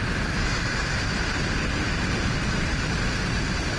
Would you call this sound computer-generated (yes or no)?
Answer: no